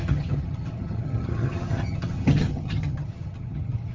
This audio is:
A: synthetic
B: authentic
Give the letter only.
A